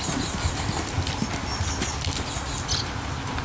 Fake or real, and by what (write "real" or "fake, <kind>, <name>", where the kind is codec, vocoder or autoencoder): real